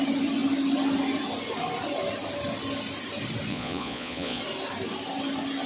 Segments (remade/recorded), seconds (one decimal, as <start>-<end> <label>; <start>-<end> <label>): 0.0-3.5 recorded; 3.5-4.4 remade; 4.4-5.7 recorded